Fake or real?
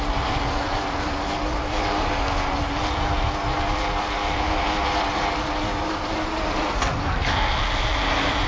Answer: real